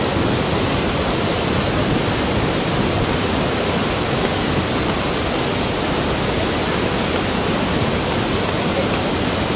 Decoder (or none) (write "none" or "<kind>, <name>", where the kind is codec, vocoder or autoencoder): none